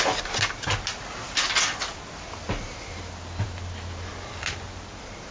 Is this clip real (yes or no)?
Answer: yes